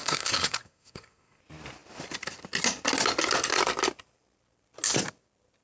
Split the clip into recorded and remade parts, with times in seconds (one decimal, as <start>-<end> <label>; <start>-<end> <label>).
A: 0.0-1.4 remade; 1.4-5.6 recorded